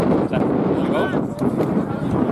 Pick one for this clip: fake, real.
real